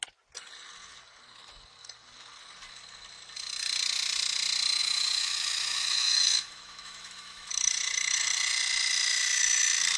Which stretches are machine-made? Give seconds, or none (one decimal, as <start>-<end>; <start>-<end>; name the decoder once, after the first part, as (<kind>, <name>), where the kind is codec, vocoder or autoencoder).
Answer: 4.8-7.5 (autoencoder, DAC-VAE)